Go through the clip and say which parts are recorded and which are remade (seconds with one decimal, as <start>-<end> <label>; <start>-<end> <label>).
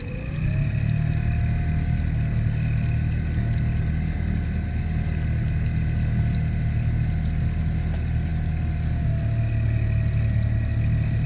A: 0.0-11.3 recorded